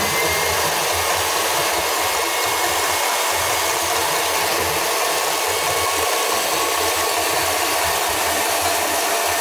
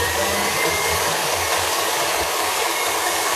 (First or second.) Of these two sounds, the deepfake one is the second